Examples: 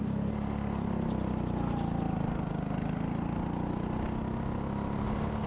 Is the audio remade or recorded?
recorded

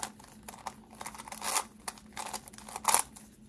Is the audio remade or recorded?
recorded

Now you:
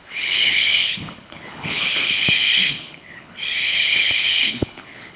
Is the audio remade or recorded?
remade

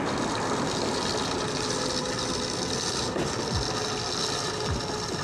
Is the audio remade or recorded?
recorded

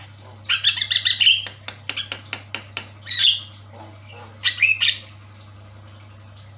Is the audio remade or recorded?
recorded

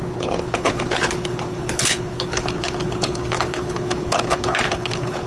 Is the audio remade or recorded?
remade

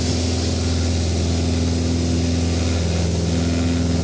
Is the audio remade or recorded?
recorded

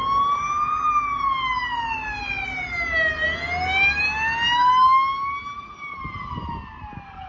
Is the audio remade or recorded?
recorded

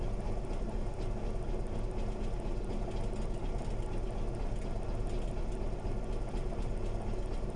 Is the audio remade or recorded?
recorded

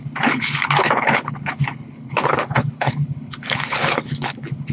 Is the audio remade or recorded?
remade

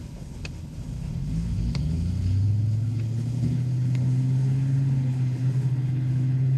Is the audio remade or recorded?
remade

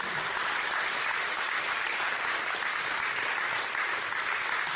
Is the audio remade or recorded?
recorded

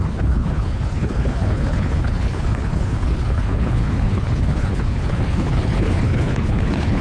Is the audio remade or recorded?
remade